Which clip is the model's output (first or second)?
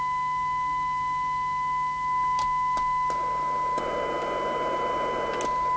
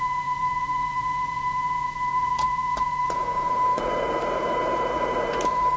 second